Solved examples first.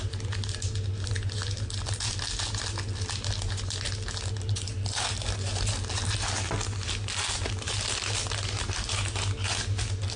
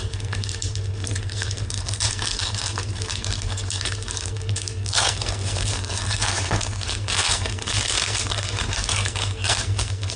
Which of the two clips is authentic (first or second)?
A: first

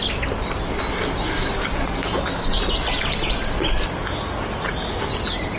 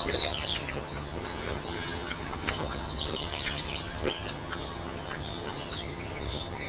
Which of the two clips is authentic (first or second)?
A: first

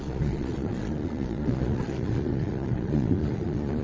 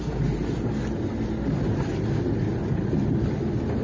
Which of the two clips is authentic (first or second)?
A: second